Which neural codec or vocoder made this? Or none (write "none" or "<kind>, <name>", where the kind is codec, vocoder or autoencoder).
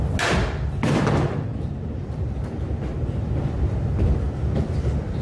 none